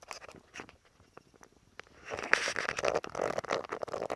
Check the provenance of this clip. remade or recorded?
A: recorded